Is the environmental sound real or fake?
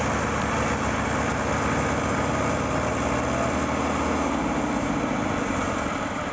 real